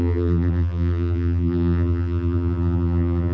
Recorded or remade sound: remade